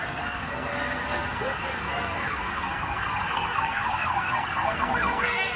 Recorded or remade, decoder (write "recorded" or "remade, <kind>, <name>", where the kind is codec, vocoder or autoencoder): remade, codec, SNAC